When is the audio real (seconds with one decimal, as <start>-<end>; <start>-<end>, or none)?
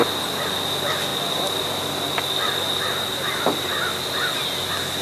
0.0-5.0